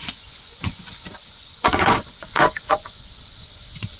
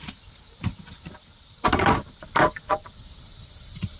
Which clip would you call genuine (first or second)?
second